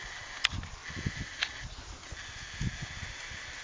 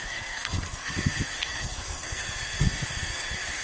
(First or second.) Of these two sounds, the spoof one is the second